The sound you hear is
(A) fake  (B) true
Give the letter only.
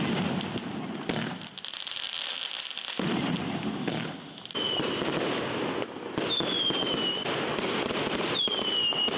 B